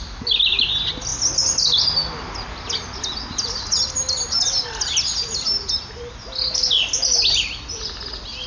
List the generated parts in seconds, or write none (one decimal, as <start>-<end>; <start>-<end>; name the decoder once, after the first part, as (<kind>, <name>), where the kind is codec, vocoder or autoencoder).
none